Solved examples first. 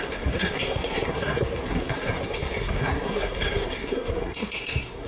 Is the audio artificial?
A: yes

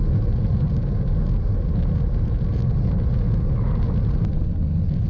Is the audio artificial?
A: no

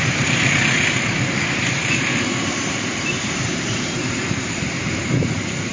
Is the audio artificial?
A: yes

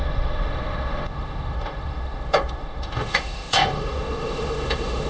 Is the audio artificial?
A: yes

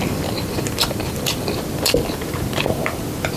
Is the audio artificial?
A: yes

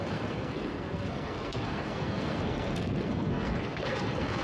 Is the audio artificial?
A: yes